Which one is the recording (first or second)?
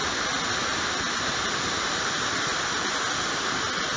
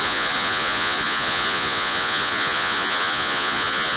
first